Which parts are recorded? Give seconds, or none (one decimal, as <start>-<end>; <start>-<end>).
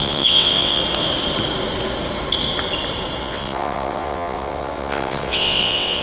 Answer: 0.8-3.2